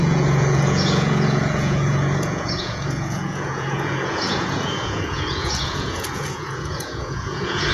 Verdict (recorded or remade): remade